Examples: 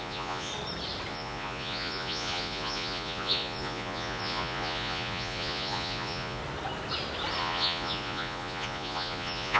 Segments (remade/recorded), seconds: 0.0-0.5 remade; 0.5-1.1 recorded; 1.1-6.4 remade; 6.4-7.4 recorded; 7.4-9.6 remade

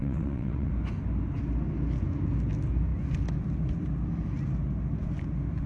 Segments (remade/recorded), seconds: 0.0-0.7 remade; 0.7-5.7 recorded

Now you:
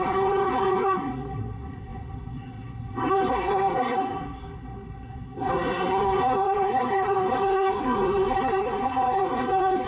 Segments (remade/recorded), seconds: 0.0-9.9 remade

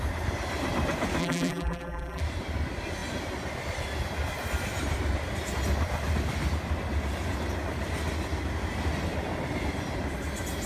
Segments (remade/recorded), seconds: 0.0-1.2 recorded; 1.2-2.2 remade; 2.2-10.7 recorded